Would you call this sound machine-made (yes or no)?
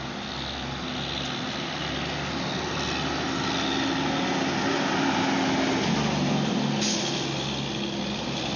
no